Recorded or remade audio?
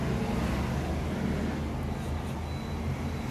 recorded